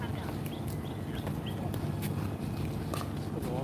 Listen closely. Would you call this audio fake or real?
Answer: real